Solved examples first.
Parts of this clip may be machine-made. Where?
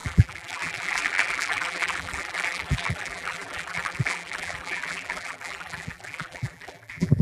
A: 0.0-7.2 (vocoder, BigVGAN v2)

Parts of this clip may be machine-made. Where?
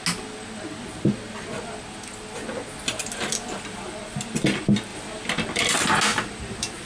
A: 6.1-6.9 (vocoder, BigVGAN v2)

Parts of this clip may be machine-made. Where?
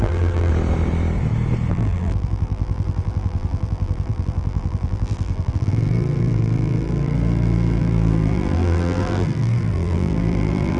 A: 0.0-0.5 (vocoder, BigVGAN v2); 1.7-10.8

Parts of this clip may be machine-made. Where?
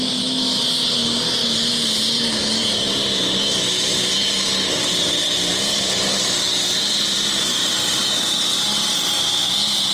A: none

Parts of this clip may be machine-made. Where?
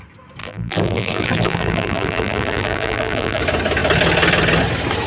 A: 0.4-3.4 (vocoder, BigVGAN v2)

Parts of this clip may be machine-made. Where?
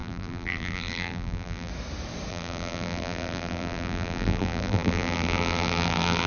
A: 0.0-1.7 (vocoder, BigVGAN v2); 2.3-6.3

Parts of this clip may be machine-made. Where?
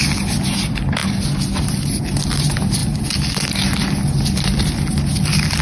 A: none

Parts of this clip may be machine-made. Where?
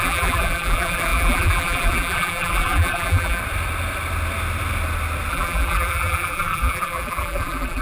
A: 0.0-3.4 (vocoder, BigVGAN v2); 5.3-7.8